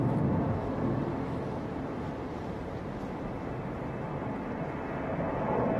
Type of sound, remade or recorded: recorded